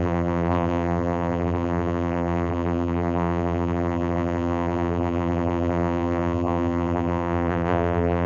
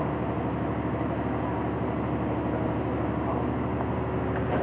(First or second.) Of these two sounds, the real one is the second